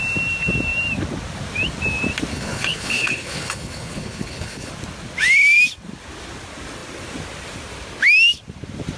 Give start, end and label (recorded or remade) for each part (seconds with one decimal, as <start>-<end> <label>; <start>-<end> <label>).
0.0-2.3 recorded; 2.3-4.7 remade; 4.7-9.0 recorded